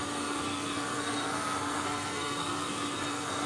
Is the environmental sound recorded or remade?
remade